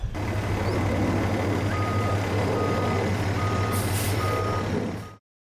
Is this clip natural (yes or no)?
yes